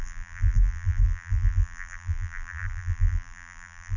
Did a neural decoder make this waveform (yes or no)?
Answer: yes